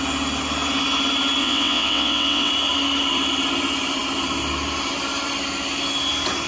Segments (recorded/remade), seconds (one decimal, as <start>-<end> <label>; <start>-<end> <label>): 0.0-1.4 recorded; 1.4-2.5 remade; 2.5-6.5 recorded